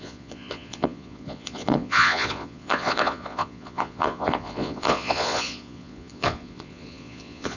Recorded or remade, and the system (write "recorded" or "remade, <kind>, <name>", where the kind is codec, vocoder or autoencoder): remade, vocoder, Vocos